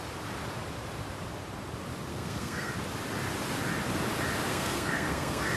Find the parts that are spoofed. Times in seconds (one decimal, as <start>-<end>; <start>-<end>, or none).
2.1-2.7; 4.5-5.6